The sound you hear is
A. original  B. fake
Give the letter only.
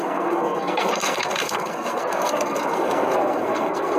B